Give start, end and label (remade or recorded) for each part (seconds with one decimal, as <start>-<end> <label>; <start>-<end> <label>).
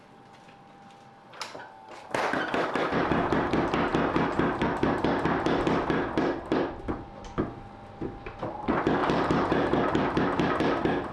0.0-9.0 recorded; 9.0-10.6 remade; 10.6-11.1 recorded